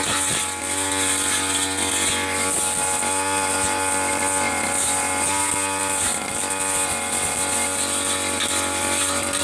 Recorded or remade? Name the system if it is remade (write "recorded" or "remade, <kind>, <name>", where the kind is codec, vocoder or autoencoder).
recorded